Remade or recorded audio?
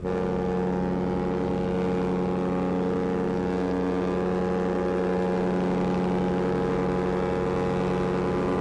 recorded